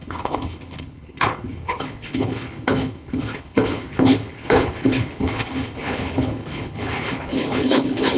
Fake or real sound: fake